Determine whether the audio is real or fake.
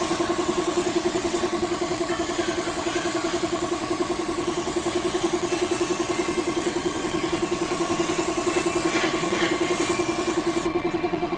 fake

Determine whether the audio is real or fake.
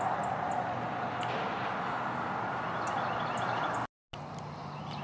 real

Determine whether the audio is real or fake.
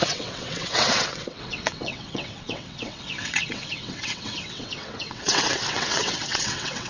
fake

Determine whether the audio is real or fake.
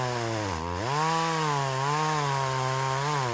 real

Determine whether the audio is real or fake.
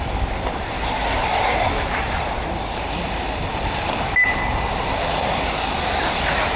real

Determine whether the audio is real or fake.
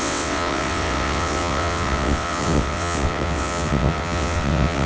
fake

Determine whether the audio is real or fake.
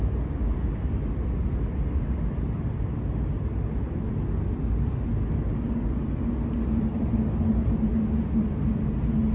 real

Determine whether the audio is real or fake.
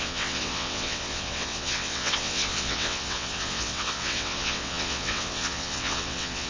fake